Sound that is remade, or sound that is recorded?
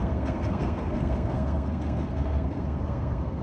remade